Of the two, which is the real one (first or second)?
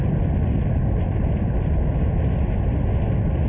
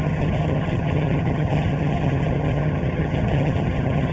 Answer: first